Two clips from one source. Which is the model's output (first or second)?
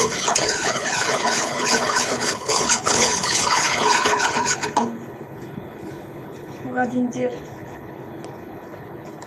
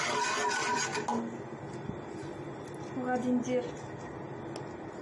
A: first